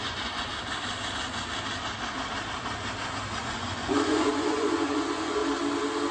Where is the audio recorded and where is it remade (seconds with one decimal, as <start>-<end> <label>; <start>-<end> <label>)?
0.0-0.5 remade; 0.5-3.4 recorded; 3.4-5.4 remade; 5.4-6.1 recorded